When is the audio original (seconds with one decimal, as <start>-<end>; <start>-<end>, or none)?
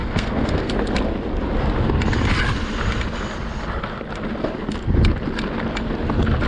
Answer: 0.7-6.5